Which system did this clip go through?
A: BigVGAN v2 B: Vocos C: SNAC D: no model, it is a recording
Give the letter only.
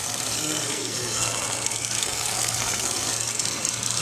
C